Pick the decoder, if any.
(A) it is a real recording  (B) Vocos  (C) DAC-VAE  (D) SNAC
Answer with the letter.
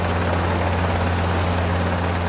A